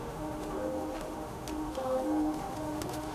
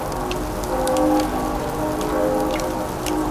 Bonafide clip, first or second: second